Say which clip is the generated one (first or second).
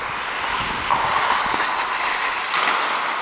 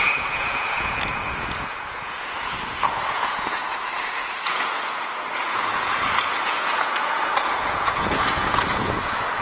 second